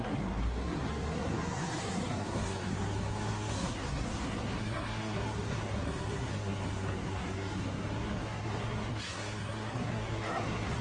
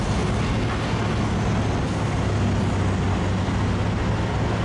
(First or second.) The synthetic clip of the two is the first